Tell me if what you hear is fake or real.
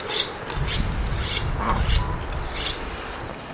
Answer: real